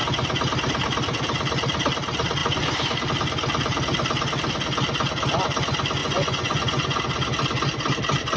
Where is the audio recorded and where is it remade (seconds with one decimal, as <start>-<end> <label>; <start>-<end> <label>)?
0.0-6.0 recorded; 6.0-7.0 remade; 7.0-8.4 recorded